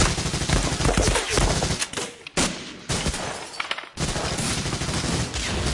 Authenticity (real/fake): real